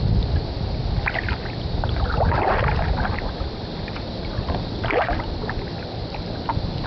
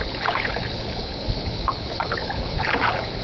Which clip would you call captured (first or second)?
first